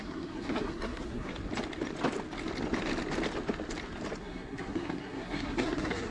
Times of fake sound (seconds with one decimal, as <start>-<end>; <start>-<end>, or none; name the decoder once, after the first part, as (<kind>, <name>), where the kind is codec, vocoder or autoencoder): 0.0-1.3 (codec, SNAC); 4.2-6.1